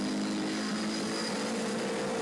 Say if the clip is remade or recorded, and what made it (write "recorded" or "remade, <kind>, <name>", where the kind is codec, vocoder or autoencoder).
recorded